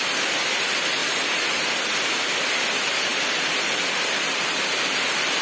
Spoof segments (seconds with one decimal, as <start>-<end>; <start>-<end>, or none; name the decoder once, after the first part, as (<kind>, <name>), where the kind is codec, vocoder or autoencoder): none